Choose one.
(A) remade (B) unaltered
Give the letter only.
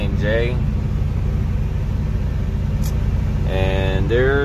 B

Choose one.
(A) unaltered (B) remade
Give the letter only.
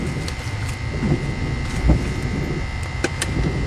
B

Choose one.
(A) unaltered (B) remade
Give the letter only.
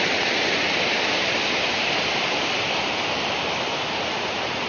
B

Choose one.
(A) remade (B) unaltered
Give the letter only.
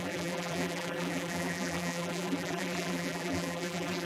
A